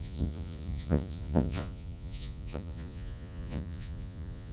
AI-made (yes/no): yes